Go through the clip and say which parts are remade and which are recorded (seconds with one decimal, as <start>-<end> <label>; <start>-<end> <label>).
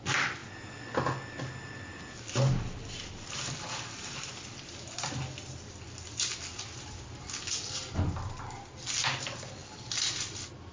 0.0-10.7 recorded